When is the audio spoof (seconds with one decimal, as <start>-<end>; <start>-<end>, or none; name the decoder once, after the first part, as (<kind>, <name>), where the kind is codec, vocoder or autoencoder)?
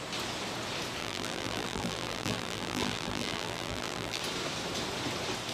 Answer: 1.0-4.2 (vocoder, BigVGAN v2)